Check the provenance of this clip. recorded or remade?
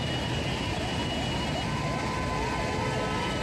recorded